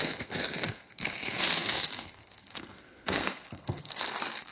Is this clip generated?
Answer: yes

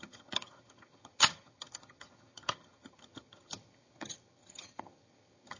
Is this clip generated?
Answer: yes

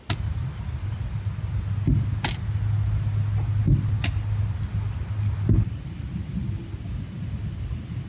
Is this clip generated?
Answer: no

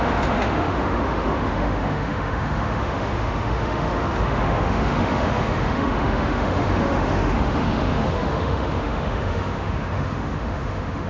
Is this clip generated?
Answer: yes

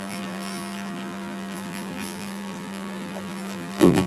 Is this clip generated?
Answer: yes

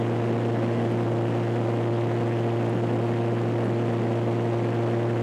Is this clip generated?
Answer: no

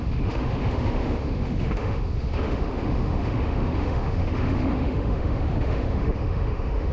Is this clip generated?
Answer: yes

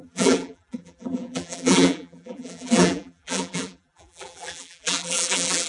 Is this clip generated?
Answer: yes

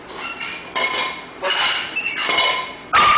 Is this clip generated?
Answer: no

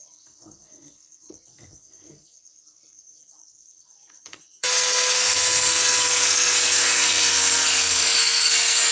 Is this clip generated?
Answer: yes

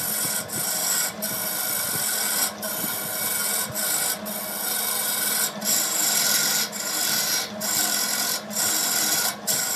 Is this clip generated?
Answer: no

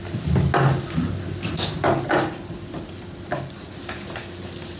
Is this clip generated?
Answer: no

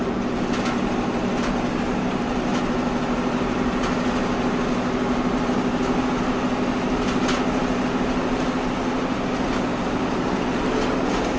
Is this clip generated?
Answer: no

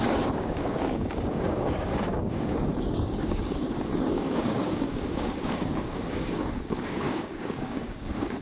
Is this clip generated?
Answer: yes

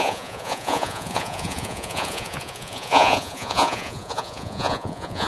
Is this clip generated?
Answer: yes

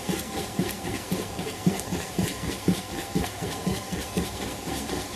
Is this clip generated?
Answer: yes